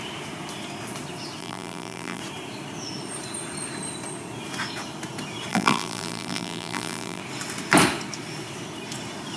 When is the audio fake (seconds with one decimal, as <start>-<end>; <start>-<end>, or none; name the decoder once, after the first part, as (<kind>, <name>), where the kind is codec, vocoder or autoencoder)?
1.4-2.2 (vocoder, BigVGAN v2); 5.5-7.2